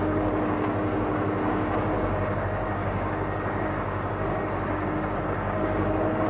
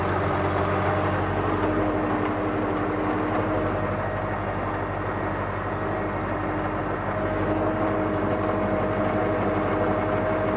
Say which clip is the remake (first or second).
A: first